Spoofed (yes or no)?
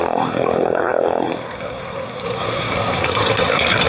yes